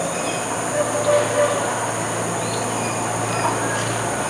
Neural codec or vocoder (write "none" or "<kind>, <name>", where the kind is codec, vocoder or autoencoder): none